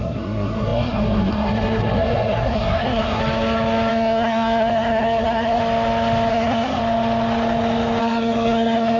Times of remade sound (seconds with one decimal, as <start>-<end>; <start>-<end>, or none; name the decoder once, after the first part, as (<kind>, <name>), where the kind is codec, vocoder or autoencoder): 0.0-3.2 (codec, SNAC); 3.9-5.6; 6.3-6.8; 8.0-9.0